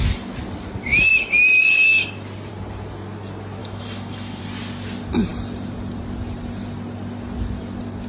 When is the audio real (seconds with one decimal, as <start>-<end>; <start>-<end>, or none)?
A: 0.0-3.6; 4.4-8.1